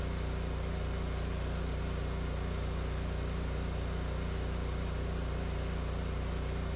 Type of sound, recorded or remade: recorded